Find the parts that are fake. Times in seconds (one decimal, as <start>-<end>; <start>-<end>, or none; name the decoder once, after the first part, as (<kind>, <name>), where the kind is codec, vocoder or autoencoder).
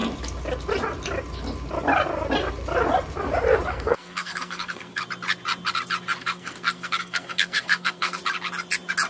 3.7-5.0 (codec, SNAC); 6.2-8.2